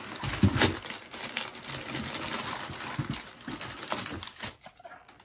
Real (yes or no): yes